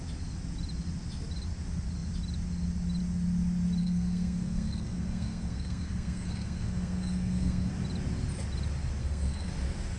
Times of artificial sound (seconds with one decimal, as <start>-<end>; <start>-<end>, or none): 3.8-7.7; 9.0-9.5